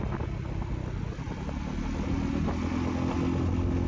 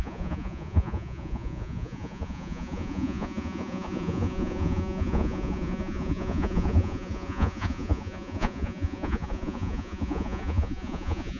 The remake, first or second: second